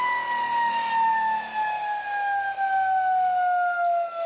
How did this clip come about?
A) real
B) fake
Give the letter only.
A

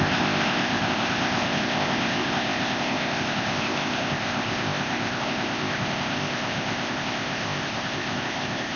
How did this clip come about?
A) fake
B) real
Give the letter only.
A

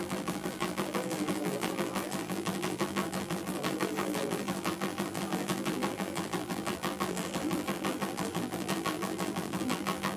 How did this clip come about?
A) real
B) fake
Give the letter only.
B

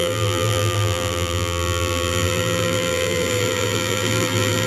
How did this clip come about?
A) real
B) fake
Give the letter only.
B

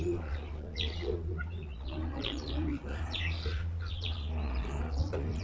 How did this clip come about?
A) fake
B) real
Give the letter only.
A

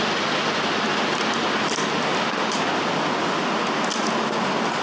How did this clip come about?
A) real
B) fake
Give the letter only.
A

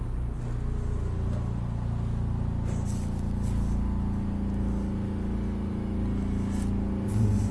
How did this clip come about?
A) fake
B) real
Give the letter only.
B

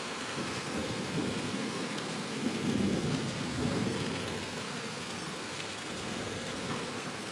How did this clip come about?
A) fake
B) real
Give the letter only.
A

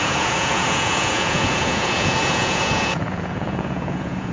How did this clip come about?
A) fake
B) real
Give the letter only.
A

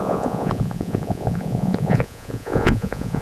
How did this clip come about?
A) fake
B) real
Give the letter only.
A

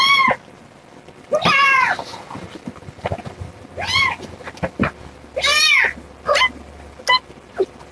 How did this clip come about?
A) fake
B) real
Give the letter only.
B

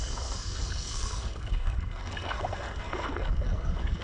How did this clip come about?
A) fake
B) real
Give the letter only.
A